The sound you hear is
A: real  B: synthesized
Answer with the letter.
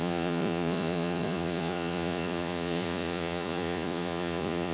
B